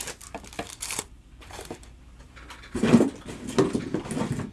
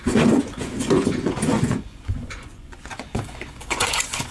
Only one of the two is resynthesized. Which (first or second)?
second